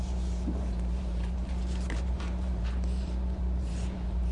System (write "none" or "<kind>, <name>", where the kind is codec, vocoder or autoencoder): vocoder, BigVGAN v2